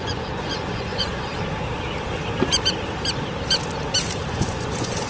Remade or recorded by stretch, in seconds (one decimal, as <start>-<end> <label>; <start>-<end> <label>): 0.0-1.3 remade; 1.3-4.3 recorded; 4.3-5.1 remade